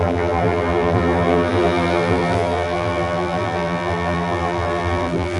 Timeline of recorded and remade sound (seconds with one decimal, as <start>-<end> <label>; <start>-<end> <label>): 0.0-5.4 remade